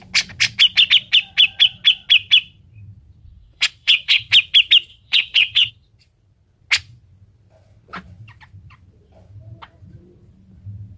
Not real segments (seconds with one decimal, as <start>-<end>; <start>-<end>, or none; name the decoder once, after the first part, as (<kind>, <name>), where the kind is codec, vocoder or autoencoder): 3.2-4.3 (vocoder, WaveNeXt); 4.9-5.7